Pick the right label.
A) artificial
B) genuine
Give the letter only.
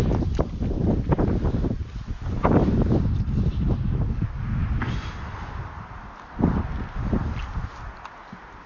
B